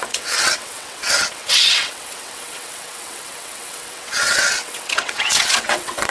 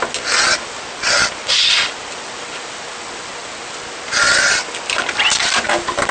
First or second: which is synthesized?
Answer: first